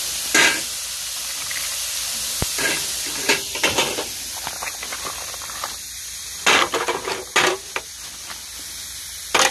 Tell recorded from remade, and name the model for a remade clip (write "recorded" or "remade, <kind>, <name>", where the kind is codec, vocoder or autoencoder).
recorded